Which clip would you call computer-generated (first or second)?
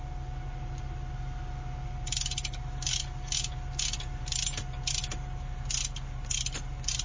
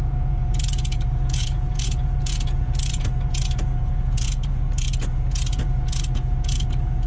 second